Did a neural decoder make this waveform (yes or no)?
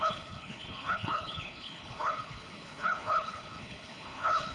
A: yes